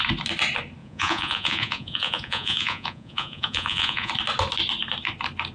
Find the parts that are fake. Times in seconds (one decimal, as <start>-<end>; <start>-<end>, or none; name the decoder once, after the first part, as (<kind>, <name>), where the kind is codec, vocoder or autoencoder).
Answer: 0.8-4.1 (vocoder, Vocos)